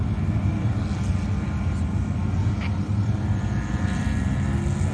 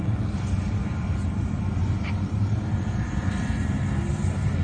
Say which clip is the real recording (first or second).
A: first